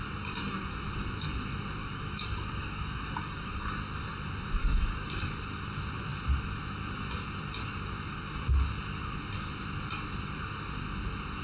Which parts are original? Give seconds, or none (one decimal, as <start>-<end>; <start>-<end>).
0.0-1.8; 3.7-4.6; 5.2-11.4